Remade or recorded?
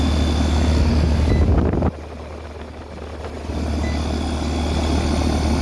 recorded